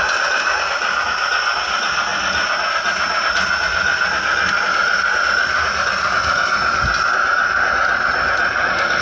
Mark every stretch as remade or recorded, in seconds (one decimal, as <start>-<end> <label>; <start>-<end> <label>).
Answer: 0.0-9.0 recorded